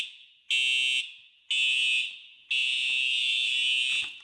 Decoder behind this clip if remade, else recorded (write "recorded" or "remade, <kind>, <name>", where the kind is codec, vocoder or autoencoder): recorded